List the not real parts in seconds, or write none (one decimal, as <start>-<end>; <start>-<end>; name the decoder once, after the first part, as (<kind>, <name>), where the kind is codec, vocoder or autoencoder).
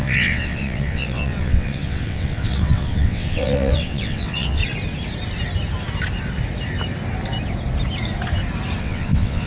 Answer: 0.0-4.6 (vocoder, WaveNeXt); 8.8-9.5